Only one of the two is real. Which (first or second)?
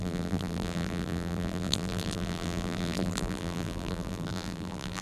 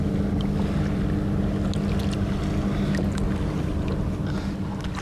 second